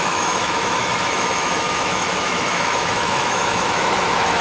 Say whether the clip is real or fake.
fake